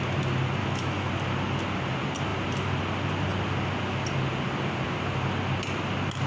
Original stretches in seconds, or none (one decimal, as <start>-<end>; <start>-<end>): 0.0-0.6; 1.1-6.3